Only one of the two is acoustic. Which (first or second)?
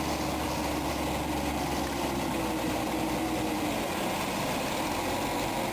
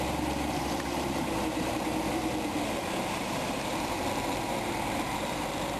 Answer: first